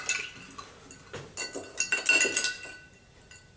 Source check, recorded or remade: recorded